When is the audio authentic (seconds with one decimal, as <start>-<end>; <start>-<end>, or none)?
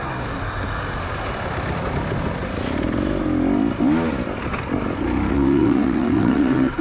0.0-5.3